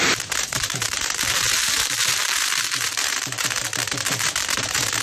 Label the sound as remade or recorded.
remade